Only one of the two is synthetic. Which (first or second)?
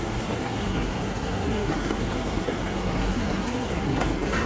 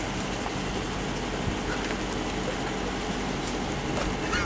first